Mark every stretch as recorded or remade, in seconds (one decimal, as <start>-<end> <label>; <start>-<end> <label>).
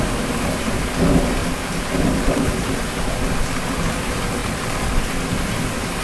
0.0-1.4 recorded; 1.4-3.8 remade; 3.8-4.4 recorded; 4.4-5.5 remade; 5.5-6.0 recorded